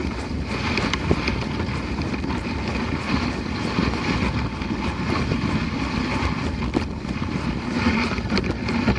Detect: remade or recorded recorded